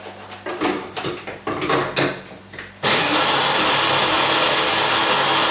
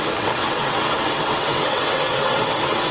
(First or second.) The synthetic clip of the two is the second